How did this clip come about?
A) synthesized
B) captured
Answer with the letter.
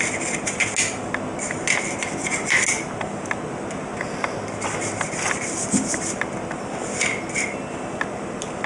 B